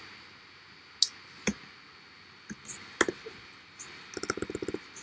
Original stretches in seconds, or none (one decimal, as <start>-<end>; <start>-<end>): 0.0-5.0